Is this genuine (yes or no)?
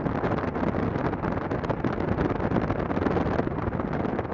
yes